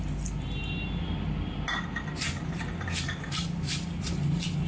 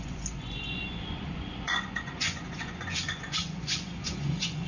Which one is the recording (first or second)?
first